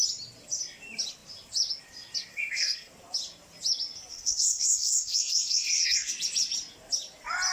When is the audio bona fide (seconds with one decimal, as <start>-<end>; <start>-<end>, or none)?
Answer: 0.0-2.3; 2.9-4.1; 6.1-7.5